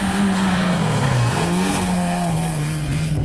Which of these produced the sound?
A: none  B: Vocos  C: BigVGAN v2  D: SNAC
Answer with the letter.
D